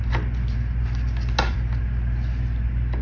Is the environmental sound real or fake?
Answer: real